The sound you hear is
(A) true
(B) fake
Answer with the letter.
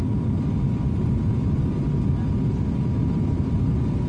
A